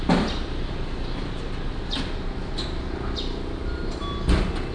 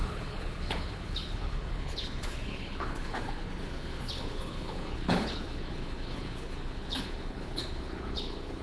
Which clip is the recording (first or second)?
first